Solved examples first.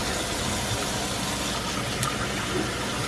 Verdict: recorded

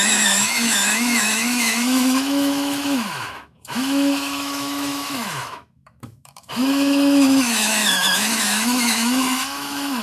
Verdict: remade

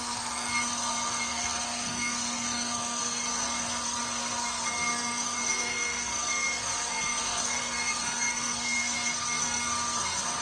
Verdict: remade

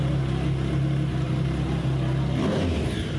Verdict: recorded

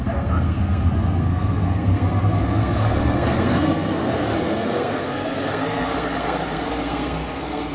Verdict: remade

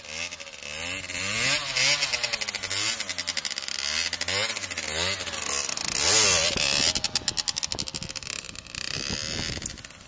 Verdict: recorded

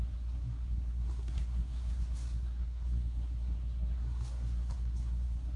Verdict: remade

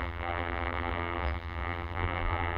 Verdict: remade